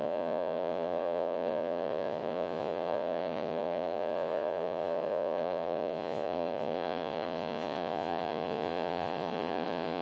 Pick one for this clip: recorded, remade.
remade